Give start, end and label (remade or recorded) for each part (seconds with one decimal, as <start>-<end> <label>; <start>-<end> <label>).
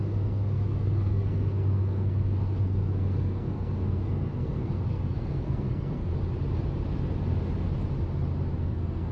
0.0-6.1 remade; 6.1-8.6 recorded; 8.6-9.1 remade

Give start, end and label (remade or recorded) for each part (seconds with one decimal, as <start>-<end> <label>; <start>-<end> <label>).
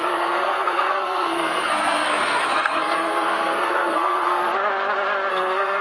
0.0-4.4 remade; 4.4-5.3 recorded; 5.3-5.8 remade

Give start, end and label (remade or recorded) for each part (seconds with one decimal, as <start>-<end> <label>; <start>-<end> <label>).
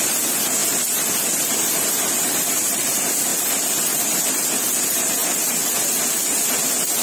0.0-7.0 recorded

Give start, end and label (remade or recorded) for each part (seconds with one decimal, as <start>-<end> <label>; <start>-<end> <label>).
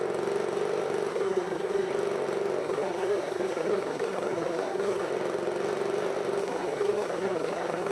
0.0-1.1 recorded; 1.1-1.9 remade; 1.9-2.6 recorded; 2.6-5.1 remade; 5.1-6.4 recorded; 6.4-7.9 remade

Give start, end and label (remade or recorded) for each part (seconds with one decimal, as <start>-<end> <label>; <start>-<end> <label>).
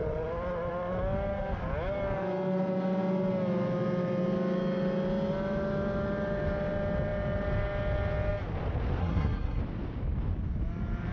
0.0-9.0 recorded; 9.0-9.6 remade; 9.6-11.1 recorded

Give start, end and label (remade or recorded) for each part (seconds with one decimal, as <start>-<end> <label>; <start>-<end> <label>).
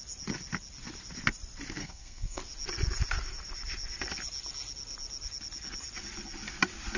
0.0-1.8 recorded; 1.8-2.4 remade; 2.4-7.0 recorded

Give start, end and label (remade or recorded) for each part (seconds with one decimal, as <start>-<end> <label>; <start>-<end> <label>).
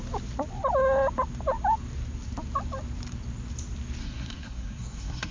0.0-4.0 recorded; 4.0-5.3 remade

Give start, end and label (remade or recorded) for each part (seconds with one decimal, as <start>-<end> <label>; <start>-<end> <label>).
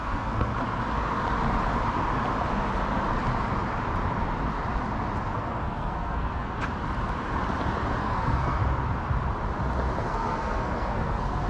0.0-0.5 remade; 0.5-5.2 recorded; 5.2-6.6 remade; 6.6-8.0 recorded; 8.0-8.6 remade; 8.6-10.0 recorded; 10.0-11.5 remade